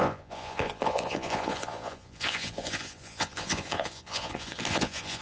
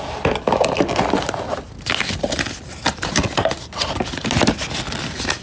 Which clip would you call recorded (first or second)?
second